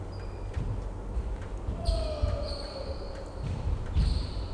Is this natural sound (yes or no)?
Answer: yes